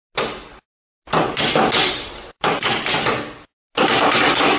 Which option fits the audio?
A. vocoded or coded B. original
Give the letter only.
B